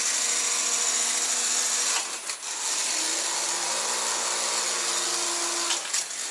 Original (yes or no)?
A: yes